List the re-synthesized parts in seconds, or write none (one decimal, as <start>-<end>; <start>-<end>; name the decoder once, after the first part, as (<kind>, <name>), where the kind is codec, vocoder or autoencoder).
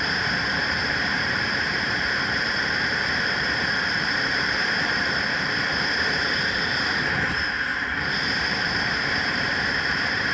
0.0-10.3 (vocoder, BigVGAN v2)